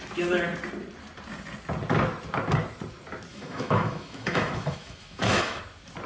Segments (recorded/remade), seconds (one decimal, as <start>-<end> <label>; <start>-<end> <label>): 0.0-3.3 recorded; 3.3-5.6 remade; 5.6-6.1 recorded